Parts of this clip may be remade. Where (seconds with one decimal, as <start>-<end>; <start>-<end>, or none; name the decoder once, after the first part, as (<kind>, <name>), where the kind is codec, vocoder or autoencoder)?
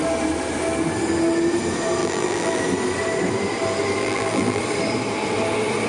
2.0-2.6 (vocoder, BigVGAN v2); 4.0-4.6